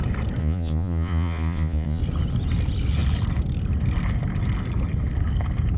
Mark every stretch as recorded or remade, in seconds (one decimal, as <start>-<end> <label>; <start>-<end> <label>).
0.0-0.4 recorded; 0.4-2.0 remade; 2.0-5.8 recorded

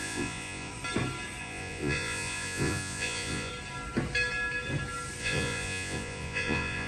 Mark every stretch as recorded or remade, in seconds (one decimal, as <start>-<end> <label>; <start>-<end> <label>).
0.0-0.7 remade; 0.7-1.4 recorded; 1.4-3.5 remade; 3.5-5.2 recorded; 5.2-6.9 remade

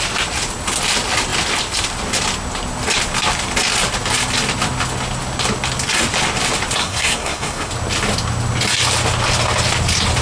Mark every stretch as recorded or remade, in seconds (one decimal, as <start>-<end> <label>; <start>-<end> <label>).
0.0-6.8 recorded; 6.8-7.7 remade; 7.7-10.2 recorded

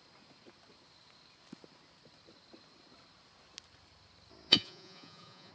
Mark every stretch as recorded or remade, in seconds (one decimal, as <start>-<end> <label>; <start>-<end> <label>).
0.0-4.5 recorded; 4.5-5.5 remade